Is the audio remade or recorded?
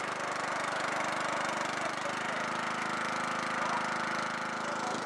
recorded